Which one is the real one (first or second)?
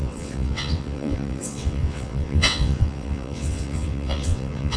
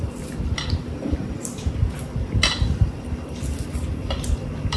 second